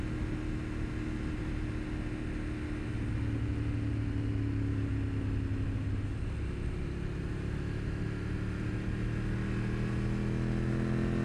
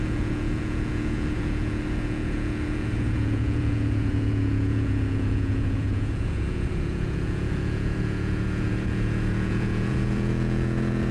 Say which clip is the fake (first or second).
second